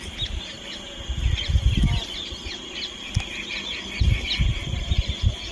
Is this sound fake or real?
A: real